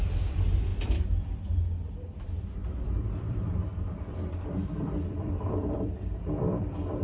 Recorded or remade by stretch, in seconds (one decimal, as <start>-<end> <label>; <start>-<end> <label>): 0.0-0.7 remade; 0.7-3.1 recorded; 3.1-3.7 remade; 3.7-4.3 recorded; 4.3-7.0 remade